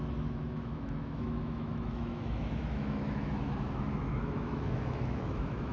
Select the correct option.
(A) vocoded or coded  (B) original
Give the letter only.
A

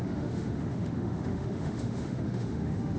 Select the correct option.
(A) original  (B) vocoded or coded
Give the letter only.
B